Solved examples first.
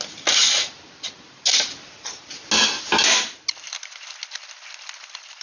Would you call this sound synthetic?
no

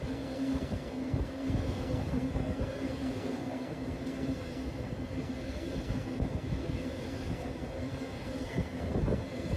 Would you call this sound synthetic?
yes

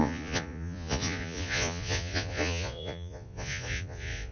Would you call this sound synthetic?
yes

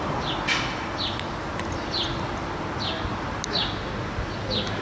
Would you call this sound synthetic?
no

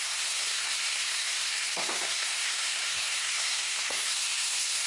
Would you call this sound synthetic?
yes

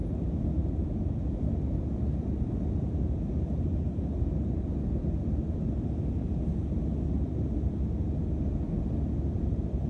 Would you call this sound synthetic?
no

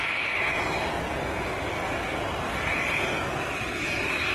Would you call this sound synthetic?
no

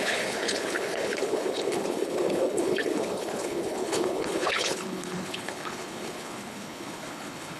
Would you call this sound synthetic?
yes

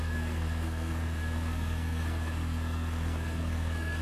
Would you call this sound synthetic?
yes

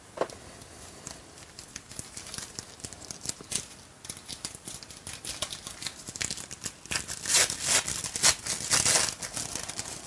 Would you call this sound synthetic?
no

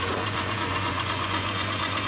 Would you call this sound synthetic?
yes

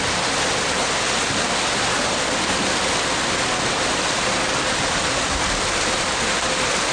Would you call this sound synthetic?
no